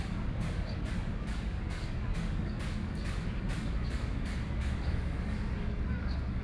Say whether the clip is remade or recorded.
remade